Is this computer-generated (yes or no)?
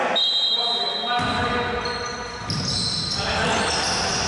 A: no